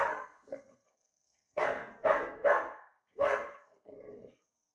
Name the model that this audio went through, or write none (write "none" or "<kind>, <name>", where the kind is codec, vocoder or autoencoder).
codec, SNAC